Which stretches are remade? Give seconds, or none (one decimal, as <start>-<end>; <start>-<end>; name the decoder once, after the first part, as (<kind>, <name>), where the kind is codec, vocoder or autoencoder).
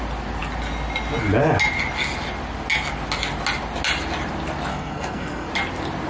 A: 4.7-5.5 (codec, SNAC)